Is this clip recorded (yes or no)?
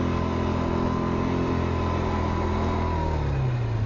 yes